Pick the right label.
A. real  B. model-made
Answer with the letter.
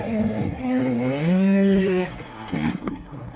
B